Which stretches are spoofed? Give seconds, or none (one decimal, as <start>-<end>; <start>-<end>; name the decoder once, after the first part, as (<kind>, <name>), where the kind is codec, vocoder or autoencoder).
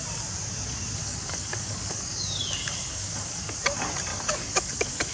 1.0-3.5 (codec, DAC); 4.1-5.1